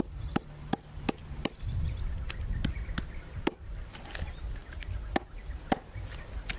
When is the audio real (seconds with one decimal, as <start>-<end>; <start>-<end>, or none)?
0.0-1.2; 2.4-6.6

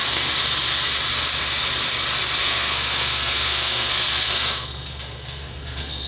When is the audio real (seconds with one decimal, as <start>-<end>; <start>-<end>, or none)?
0.0-2.4

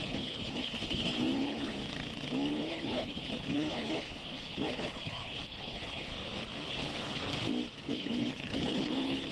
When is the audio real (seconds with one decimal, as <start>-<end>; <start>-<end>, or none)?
1.8-2.5; 6.1-6.7; 7.3-7.9

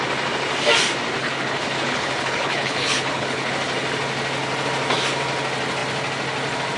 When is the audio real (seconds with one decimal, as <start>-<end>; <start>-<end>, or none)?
0.0-1.2; 3.5-6.8

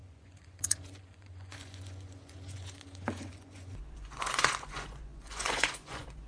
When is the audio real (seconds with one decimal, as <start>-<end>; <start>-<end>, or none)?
none